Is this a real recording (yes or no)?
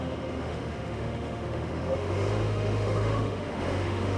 no